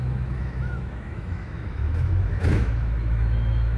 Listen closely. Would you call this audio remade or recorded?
remade